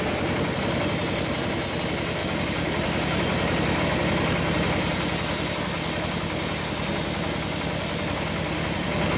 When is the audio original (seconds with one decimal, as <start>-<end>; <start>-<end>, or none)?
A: 0.0-2.2; 3.8-9.2